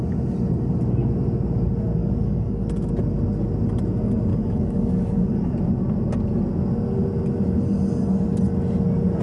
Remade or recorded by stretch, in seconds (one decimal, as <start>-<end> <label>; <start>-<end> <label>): 0.0-2.0 recorded; 2.0-2.9 remade; 2.9-4.3 recorded; 4.3-5.5 remade; 5.5-9.2 recorded